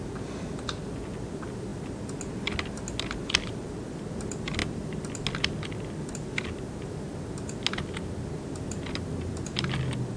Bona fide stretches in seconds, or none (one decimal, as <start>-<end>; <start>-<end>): 0.0-10.2

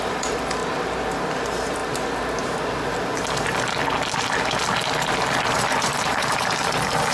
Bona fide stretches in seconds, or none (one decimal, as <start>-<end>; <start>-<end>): 0.6-1.1; 1.8-5.5